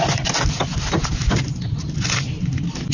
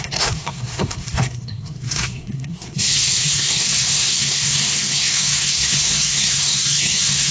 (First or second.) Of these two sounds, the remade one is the second